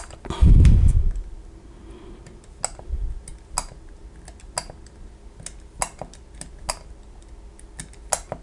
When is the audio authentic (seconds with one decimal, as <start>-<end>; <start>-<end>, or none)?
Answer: 0.0-8.4